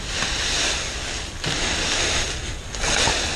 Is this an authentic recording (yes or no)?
yes